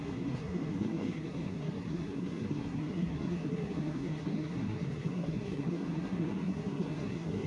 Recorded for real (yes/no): no